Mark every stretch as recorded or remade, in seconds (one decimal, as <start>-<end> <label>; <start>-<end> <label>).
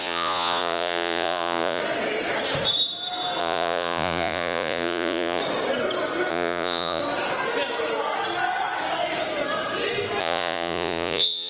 0.0-1.8 remade; 1.8-3.4 recorded; 3.4-5.4 remade; 5.4-6.3 recorded; 6.3-7.0 remade; 7.0-10.2 recorded; 10.2-11.5 remade